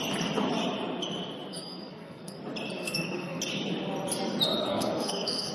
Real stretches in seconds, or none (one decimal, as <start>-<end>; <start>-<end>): 0.0-1.5; 2.4-2.8; 3.4-4.7